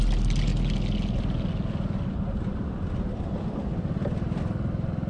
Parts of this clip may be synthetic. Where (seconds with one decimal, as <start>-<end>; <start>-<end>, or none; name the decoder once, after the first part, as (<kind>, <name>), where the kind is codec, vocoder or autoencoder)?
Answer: none